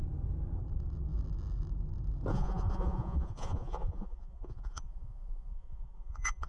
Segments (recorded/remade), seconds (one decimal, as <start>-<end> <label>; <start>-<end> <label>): 0.0-2.3 recorded; 2.3-6.5 remade